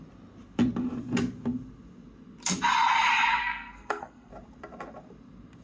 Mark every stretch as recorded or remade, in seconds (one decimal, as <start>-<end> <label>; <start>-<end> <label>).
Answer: 0.0-3.4 recorded; 3.4-4.3 remade; 4.3-5.6 recorded